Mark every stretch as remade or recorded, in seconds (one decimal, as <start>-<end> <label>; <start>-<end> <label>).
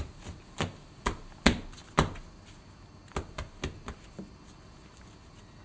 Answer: 0.0-5.6 recorded